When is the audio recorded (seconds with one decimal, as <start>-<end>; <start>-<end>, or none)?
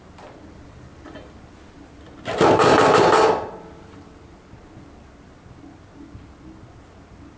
0.0-7.4